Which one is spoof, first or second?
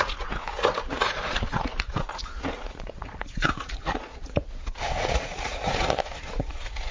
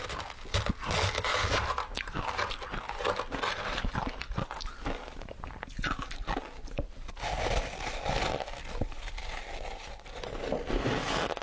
first